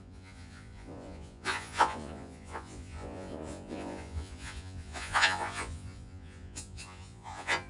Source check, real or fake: fake